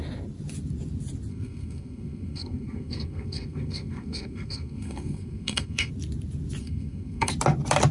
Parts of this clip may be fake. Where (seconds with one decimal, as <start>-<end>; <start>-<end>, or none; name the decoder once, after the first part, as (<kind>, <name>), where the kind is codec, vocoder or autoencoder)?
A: 1.3-5.9 (codec, SNAC); 6.6-7.3

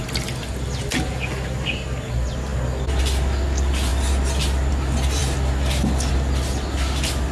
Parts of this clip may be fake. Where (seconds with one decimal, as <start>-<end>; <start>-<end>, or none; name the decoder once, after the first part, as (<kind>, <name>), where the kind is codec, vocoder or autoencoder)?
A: none

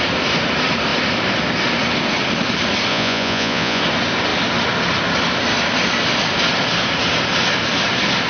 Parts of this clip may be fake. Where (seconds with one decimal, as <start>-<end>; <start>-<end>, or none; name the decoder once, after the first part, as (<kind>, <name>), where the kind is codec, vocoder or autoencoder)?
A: 2.9-3.8 (vocoder, Vocos)